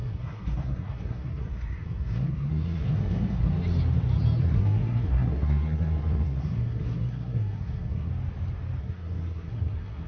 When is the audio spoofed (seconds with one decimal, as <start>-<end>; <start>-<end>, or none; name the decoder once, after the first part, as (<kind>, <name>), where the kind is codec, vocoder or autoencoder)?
0.0-3.5 (codec, SNAC); 4.4-8.1; 8.8-10.1